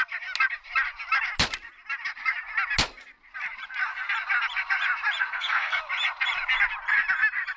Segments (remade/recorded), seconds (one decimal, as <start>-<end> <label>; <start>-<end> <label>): 0.0-5.2 recorded; 5.2-5.8 remade; 5.8-7.6 recorded